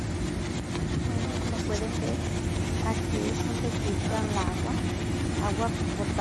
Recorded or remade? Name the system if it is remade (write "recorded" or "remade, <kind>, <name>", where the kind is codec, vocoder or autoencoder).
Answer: recorded